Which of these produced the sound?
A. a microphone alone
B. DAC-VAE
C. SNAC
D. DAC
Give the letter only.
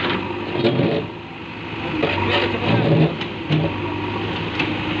A